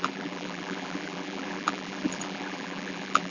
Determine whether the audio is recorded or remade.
remade